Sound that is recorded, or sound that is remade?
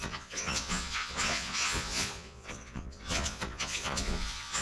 remade